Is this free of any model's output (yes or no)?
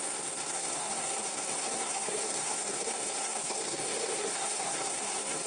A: no